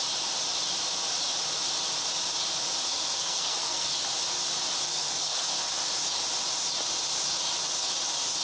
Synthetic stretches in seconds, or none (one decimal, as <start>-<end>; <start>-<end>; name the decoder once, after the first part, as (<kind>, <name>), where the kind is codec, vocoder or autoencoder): 2.9-3.9 (codec, SNAC); 4.9-5.6